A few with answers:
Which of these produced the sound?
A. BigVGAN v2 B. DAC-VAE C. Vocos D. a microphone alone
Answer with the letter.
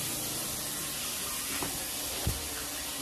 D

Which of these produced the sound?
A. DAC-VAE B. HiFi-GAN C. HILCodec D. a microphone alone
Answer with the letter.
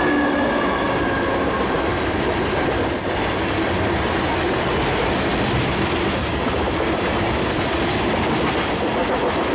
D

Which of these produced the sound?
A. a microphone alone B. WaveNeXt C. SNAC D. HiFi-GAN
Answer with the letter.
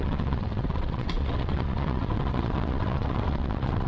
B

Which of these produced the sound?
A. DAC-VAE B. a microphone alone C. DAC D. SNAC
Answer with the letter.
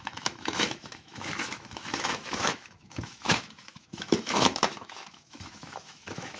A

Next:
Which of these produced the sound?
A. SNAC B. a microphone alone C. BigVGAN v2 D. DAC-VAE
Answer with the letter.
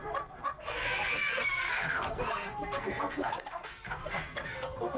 A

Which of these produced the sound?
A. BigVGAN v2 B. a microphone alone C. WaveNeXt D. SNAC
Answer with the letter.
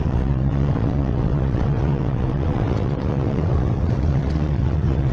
C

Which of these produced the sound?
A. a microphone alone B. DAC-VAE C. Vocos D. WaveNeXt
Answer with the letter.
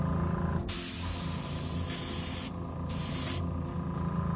A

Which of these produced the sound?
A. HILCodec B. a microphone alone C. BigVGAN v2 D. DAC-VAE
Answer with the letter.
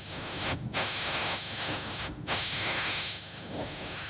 D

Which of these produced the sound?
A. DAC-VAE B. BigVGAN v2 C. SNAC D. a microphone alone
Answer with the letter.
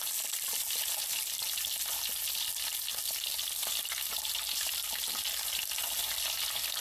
D